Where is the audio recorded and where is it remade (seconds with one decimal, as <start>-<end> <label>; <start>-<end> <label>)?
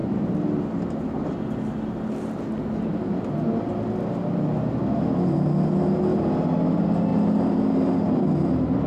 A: 0.0-7.1 recorded; 7.1-7.9 remade; 7.9-8.9 recorded